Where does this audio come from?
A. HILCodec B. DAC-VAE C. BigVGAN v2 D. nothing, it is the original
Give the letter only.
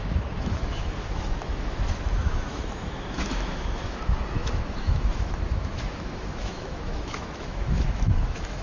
B